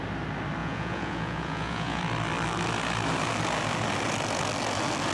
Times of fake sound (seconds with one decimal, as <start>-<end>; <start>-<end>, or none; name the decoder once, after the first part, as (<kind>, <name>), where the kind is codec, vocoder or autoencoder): 0.6-2.0 (vocoder, Vocos)